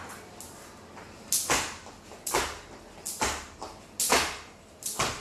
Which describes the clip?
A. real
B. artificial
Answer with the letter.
A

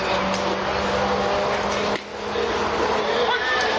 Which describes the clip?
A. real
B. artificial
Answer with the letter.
A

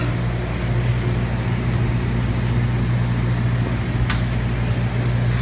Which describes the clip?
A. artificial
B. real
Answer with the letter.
B